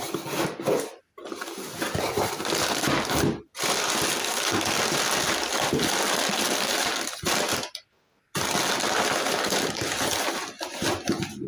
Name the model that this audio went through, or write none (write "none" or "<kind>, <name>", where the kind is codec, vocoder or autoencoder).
none